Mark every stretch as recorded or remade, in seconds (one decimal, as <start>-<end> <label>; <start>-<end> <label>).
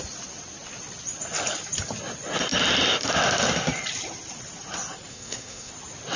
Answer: 0.0-5.1 recorded; 5.1-5.7 remade; 5.7-6.2 recorded